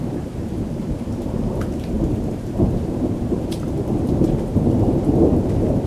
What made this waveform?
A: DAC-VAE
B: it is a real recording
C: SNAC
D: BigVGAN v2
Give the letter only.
D